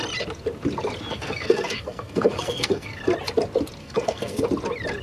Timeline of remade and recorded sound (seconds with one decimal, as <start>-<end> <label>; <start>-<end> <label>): 0.0-1.1 recorded; 1.1-3.0 remade; 3.0-3.8 recorded; 3.8-4.4 remade; 4.4-5.0 recorded